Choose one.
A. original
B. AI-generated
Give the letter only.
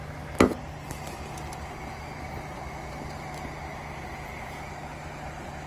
A